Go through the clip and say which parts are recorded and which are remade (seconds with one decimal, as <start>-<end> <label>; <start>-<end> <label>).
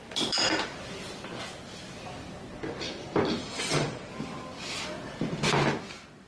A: 0.0-3.4 recorded; 3.4-4.1 remade; 4.1-6.3 recorded